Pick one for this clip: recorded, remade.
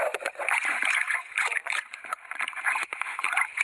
remade